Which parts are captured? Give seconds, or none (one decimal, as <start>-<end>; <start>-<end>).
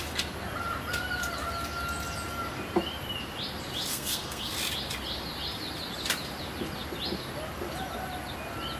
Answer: 0.0-3.9; 4.5-8.8